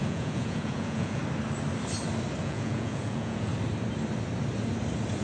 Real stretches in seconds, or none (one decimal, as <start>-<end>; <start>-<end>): 1.2-2.4; 3.5-5.2